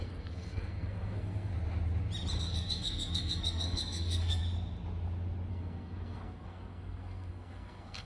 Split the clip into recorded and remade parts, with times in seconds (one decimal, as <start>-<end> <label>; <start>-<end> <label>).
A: 0.0-1.5 remade; 1.5-2.4 recorded; 2.4-4.4 remade; 4.4-5.5 recorded; 5.5-8.1 remade